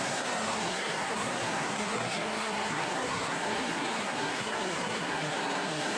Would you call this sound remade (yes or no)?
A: yes